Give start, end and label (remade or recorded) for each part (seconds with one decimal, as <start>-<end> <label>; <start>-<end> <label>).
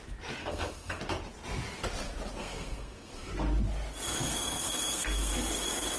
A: 0.0-0.4 recorded; 0.4-1.0 remade; 1.0-2.4 recorded; 2.4-3.3 remade; 3.3-4.3 recorded; 4.3-5.3 remade; 5.3-6.0 recorded